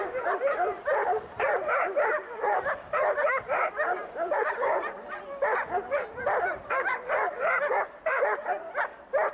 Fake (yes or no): yes